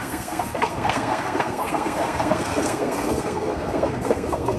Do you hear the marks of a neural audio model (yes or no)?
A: yes